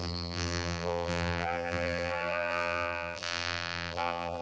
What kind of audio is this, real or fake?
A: fake